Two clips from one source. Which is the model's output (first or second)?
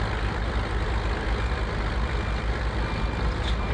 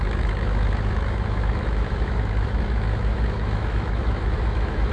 second